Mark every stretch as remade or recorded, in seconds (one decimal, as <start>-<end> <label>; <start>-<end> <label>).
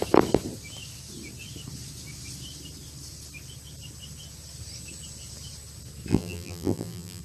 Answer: 0.0-6.1 recorded; 6.1-7.2 remade